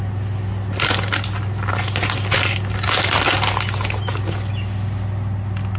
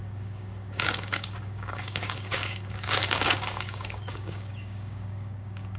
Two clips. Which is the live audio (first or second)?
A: first